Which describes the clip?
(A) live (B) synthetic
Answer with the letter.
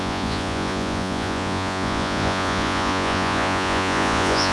B